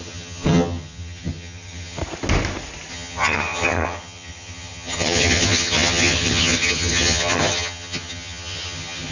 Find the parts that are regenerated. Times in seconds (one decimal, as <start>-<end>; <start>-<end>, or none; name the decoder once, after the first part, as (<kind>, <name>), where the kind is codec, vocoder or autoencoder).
0.0-2.0 (vocoder, HiFi-GAN); 2.9-9.1